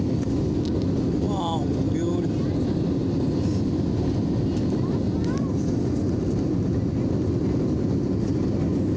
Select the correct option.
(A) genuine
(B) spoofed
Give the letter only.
A